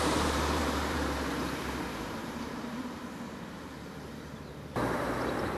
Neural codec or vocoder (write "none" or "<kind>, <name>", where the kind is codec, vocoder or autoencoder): vocoder, BigVGAN v2